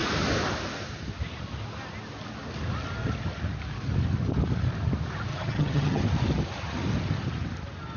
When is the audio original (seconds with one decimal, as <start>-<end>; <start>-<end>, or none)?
0.0-5.3; 6.0-8.0